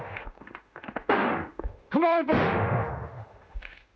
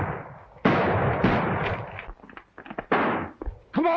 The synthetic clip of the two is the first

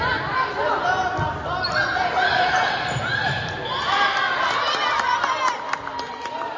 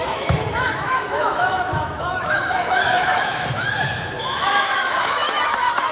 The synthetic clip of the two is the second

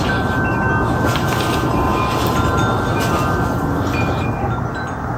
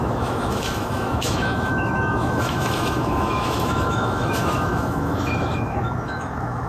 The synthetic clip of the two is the second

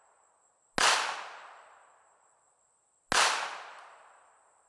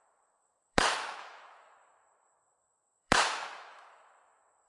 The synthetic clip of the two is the second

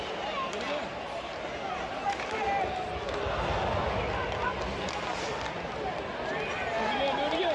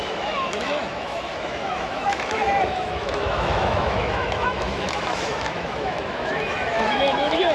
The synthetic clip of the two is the second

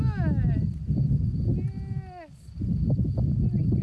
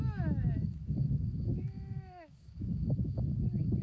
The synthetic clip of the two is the second